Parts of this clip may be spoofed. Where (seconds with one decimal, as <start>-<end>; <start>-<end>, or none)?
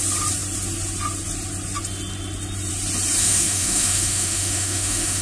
3.2-5.2